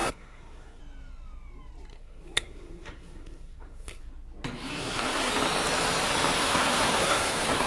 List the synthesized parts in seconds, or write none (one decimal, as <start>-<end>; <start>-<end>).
0.0-0.8; 1.9-4.0; 4.7-5.3; 6.4-7.7